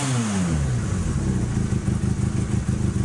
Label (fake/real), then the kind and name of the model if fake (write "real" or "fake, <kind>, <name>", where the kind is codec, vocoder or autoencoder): real